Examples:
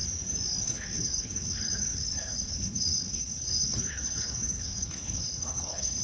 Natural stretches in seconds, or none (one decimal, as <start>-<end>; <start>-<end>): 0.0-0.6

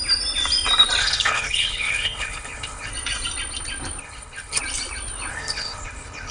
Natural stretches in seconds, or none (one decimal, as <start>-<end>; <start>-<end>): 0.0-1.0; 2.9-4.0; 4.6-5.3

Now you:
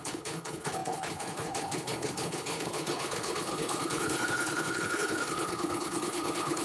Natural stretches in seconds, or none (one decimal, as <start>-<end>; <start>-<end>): none

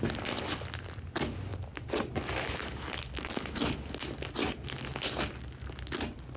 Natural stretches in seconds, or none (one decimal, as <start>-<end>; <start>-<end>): 0.0-6.4